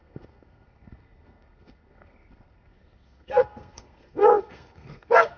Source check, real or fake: fake